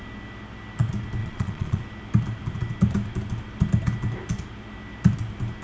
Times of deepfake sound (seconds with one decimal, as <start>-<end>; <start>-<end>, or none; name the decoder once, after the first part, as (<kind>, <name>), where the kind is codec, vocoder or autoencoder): 1.2-1.8 (vocoder, Vocos)